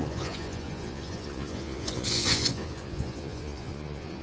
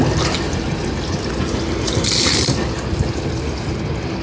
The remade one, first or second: first